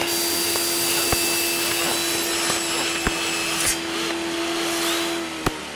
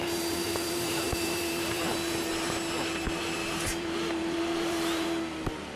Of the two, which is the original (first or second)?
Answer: first